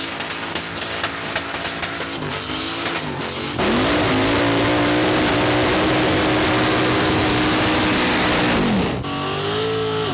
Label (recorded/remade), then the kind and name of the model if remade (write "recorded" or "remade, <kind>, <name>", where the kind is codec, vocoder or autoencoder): recorded